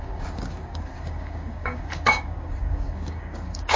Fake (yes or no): yes